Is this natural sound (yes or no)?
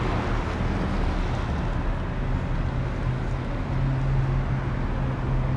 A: yes